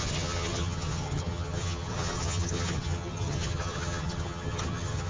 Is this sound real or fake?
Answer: fake